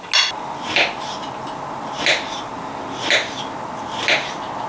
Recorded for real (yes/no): yes